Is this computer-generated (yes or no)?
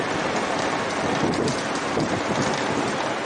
no